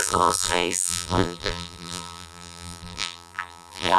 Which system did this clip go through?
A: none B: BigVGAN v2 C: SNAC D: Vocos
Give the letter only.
B